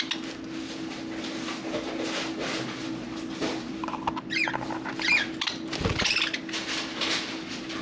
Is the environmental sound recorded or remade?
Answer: recorded